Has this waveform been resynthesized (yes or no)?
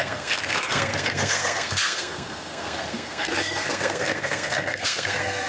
yes